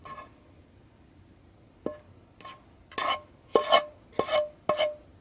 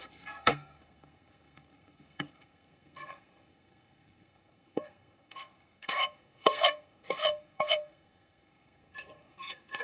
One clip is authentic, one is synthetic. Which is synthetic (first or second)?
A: second